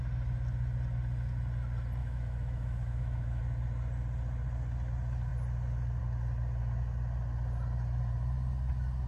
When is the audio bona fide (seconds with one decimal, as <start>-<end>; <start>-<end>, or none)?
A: 0.0-2.0; 3.4-9.1